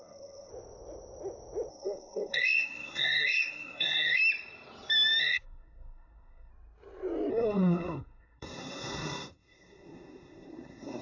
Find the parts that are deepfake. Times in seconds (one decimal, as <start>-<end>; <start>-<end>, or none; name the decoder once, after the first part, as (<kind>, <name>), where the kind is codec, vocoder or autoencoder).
0.0-0.5 (codec, SNAC); 1.7-4.2; 5.2-6.5; 7.3-11.0